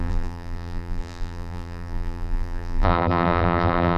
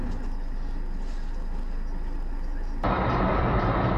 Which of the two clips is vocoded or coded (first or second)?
first